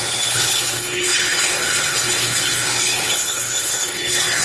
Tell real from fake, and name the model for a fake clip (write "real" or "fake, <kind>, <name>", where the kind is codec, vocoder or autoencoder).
fake, codec, HILCodec